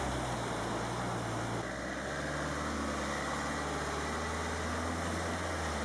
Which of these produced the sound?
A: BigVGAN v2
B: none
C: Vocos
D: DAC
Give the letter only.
B